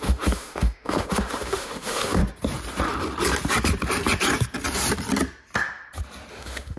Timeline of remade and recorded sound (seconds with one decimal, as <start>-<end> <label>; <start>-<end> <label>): 0.0-2.2 remade; 2.2-6.3 recorded; 6.3-6.8 remade